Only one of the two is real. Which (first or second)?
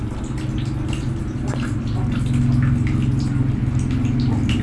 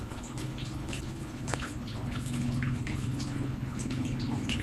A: first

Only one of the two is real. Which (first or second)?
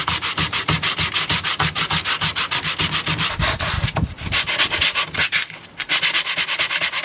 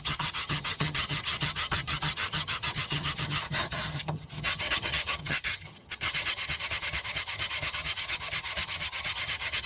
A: first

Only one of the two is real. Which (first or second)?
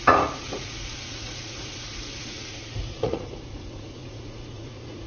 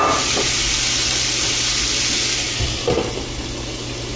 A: second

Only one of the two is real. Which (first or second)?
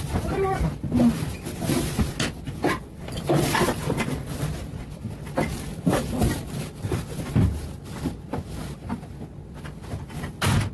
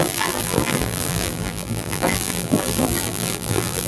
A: first